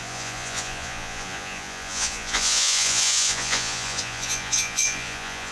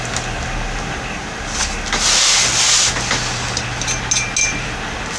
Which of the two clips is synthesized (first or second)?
first